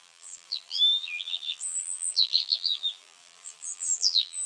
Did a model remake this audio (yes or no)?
yes